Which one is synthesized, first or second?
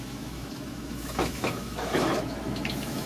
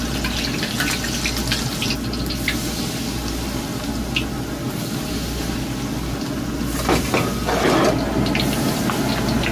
first